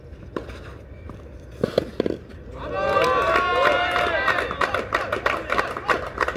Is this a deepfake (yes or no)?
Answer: no